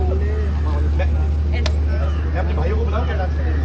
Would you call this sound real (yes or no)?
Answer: yes